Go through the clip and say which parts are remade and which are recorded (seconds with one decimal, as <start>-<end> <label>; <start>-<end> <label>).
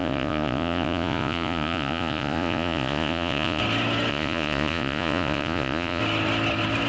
0.0-3.6 remade; 3.6-4.1 recorded; 4.1-6.0 remade; 6.0-6.9 recorded